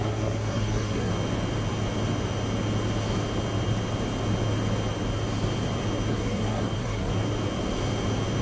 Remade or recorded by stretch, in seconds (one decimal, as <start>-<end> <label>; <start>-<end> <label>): 0.0-1.1 remade; 1.1-6.1 recorded; 6.1-7.1 remade; 7.1-8.4 recorded